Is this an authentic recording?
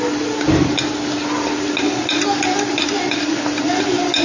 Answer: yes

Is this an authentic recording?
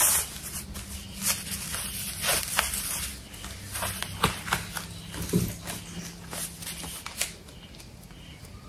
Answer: yes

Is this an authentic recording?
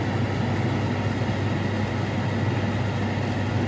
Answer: yes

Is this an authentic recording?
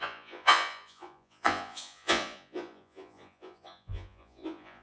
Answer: no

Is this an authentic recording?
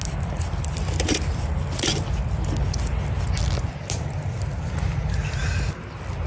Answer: yes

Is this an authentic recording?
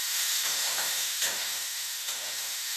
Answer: no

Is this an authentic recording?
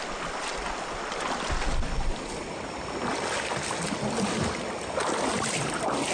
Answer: yes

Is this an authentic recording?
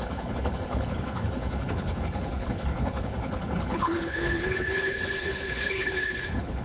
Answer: no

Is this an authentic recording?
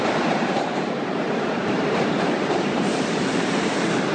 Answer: no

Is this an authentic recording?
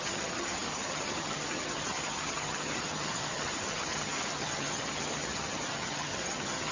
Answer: no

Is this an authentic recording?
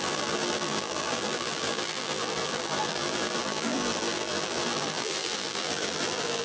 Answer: no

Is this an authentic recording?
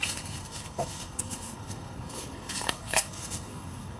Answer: no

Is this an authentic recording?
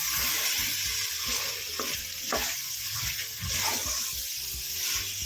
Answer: no